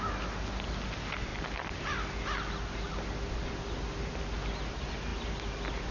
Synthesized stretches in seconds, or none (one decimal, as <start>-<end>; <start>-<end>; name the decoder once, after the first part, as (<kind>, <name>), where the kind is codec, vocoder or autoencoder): none